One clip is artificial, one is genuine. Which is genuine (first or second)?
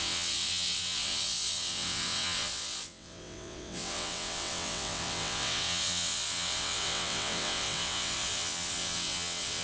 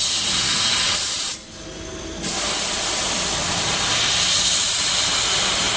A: second